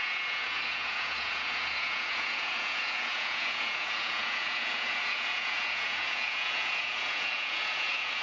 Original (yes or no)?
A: no